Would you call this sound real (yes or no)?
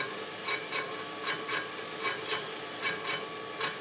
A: yes